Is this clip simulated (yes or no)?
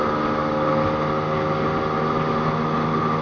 no